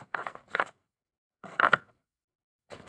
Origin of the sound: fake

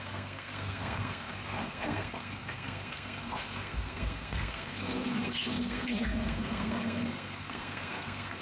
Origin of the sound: fake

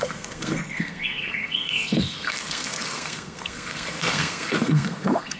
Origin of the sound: fake